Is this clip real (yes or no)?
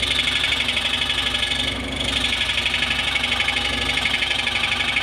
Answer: yes